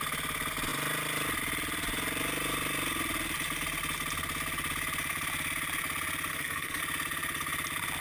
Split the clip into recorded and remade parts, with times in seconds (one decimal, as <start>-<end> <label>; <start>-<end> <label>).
0.0-6.3 recorded; 6.3-6.8 remade; 6.8-8.0 recorded